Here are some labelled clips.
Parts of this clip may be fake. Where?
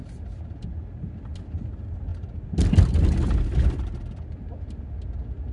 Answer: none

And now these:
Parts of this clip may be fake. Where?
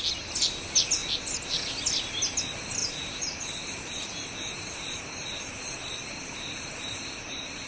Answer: 2.8-7.7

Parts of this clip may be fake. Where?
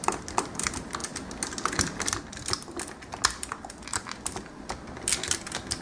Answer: none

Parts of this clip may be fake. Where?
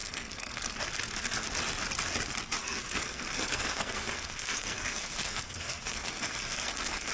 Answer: 0.0-0.6; 2.6-7.1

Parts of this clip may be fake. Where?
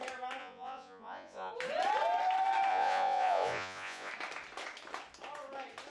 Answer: 0.4-1.5; 2.7-4.1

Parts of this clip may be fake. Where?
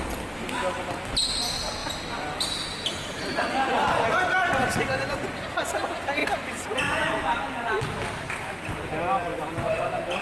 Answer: 9.3-10.2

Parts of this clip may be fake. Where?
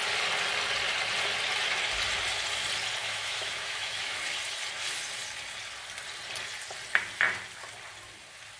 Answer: 3.0-4.2